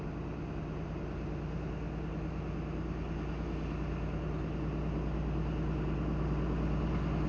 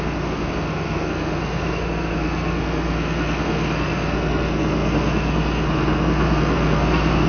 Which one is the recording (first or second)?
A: first